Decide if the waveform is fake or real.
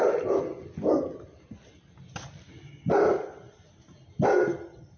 real